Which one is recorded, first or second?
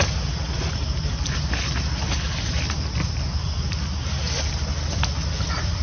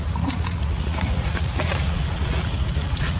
first